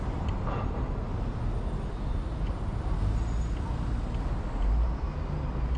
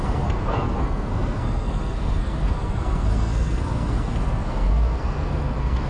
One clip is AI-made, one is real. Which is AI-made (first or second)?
second